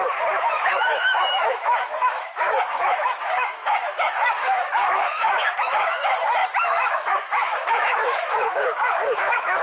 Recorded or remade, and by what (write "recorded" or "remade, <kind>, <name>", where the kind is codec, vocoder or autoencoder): remade, autoencoder, DAC-VAE